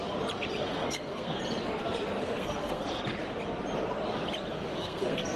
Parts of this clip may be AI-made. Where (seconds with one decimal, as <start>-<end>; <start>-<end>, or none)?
0.6-1.4; 2.2-3.0; 4.5-5.4